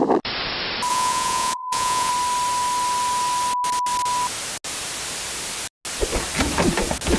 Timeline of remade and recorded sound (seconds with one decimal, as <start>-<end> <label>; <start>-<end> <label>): 0.0-0.9 recorded; 0.9-2.1 remade; 2.1-7.2 recorded